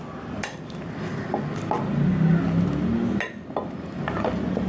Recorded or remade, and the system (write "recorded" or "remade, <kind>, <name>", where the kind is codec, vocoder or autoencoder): recorded